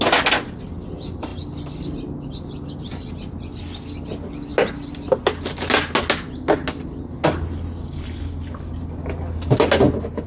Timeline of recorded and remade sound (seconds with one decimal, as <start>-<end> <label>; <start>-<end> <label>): 0.0-10.3 recorded